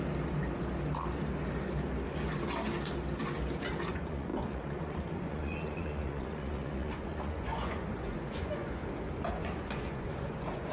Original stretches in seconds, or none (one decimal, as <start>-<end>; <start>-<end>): 0.0-3.9; 8.8-9.4

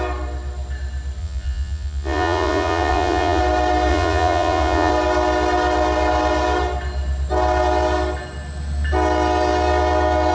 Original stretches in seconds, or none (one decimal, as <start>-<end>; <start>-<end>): 0.0-1.2; 3.4-3.9; 4.9-10.3

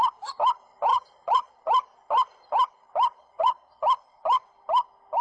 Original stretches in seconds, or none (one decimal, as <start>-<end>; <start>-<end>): 0.0-0.9; 1.5-3.1; 3.8-5.2